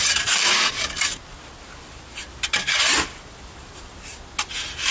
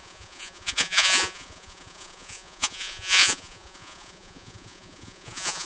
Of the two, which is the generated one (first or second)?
second